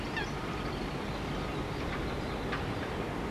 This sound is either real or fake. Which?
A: fake